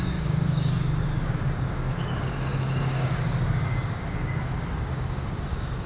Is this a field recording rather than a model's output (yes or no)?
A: no